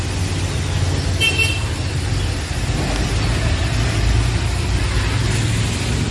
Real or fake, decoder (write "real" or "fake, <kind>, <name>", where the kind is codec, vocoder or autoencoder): real